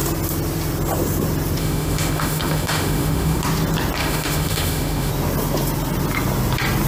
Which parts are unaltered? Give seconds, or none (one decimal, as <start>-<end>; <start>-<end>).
0.0-1.6; 3.4-4.0; 5.1-6.9